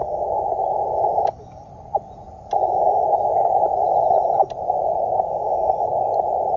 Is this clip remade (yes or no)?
no